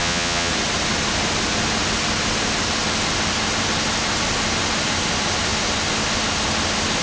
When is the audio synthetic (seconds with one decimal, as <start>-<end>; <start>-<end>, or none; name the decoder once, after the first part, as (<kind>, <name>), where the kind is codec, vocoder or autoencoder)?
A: 0.0-0.5 (vocoder, BigVGAN v2)